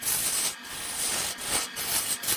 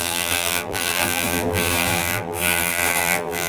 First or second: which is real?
first